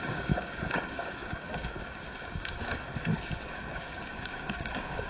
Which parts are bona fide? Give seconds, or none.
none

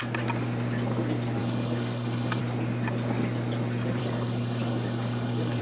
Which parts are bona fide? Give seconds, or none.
0.0-1.4; 2.4-4.0

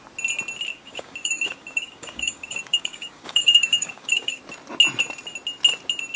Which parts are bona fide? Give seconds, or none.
0.0-0.7; 4.4-6.2

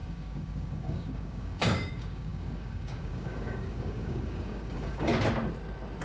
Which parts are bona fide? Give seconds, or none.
5.1-6.0

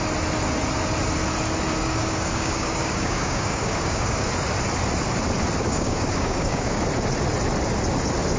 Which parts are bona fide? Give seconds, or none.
0.0-1.8; 4.3-5.7; 6.8-8.4

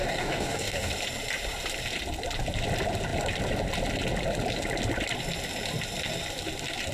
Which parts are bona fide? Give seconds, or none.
0.9-6.9

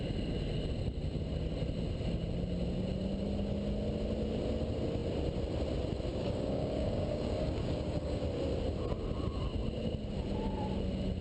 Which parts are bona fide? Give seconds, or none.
0.0-6.1; 8.2-11.2